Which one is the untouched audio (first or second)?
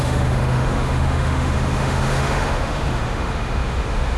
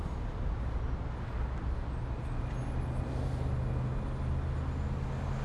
second